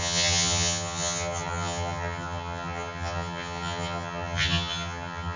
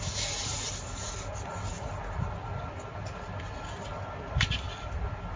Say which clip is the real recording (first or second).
second